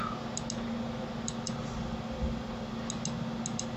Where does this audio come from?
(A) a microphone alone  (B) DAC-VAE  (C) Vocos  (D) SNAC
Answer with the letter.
A